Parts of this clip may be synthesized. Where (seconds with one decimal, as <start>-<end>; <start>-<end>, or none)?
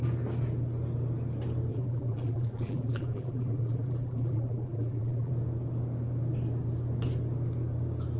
1.7-5.3